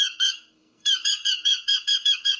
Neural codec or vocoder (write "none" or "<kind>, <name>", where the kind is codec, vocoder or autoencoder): codec, SNAC